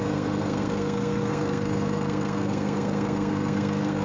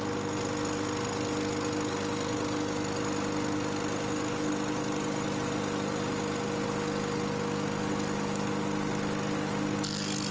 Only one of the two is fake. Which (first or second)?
first